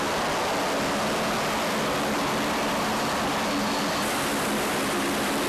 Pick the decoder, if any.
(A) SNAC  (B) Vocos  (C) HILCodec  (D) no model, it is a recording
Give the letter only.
D